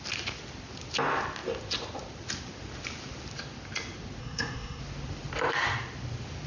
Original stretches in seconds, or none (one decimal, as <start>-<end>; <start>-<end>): 0.0-4.2; 4.8-6.5